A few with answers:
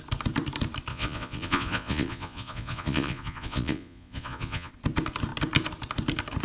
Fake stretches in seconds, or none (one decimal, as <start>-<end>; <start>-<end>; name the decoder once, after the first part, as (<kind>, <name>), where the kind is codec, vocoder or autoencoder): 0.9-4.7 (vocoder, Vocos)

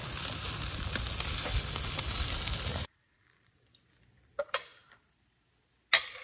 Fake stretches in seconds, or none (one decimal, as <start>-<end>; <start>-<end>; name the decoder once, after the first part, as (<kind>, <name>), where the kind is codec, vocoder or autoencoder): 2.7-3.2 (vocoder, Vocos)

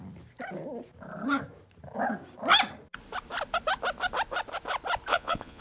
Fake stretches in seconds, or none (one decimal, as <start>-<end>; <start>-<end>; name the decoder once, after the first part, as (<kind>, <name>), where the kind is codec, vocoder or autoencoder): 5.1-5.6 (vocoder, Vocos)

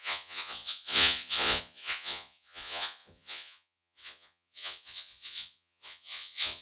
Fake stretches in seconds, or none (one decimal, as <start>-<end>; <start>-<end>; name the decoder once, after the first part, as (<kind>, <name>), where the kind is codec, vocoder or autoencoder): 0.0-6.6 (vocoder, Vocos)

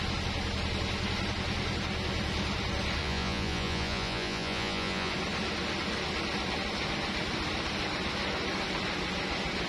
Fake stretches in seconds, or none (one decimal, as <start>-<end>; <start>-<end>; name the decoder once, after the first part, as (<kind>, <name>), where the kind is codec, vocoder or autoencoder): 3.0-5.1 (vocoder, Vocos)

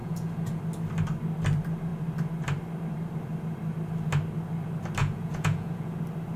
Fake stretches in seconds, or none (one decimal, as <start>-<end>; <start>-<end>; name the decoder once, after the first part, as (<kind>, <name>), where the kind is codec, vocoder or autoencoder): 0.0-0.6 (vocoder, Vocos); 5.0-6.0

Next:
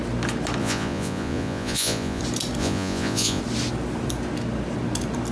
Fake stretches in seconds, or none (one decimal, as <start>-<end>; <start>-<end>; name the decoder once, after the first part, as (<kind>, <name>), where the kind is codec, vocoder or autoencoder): 0.6-2.2 (vocoder, Vocos); 2.6-3.4